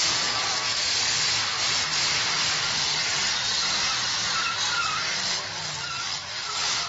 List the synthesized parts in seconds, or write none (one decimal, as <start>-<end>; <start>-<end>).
0.0-1.0